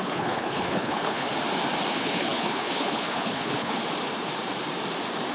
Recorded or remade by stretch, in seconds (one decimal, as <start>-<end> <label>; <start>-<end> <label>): 0.0-1.3 remade; 1.3-1.9 recorded; 1.9-3.8 remade; 3.8-5.3 recorded